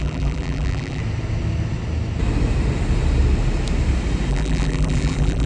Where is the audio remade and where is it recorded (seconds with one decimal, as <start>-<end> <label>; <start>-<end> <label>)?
0.0-1.0 remade; 1.0-4.3 recorded; 4.3-5.5 remade